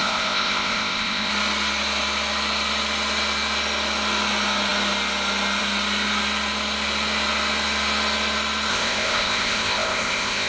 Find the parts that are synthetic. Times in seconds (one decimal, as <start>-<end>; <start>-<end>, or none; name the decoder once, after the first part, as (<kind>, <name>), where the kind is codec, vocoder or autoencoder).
0.0-1.3 (codec, ZipCodec); 8.7-10.5